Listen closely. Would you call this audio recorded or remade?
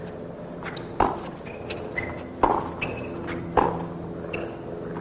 recorded